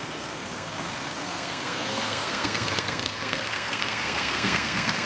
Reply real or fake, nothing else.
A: fake